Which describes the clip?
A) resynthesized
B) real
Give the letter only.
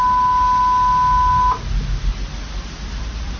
B